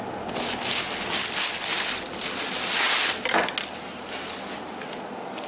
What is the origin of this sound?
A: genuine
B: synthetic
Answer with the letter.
A